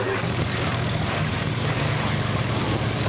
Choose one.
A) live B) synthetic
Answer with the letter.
B